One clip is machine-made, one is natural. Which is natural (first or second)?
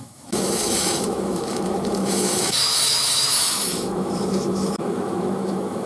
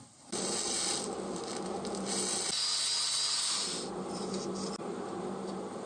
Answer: second